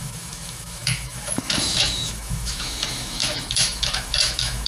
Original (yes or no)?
no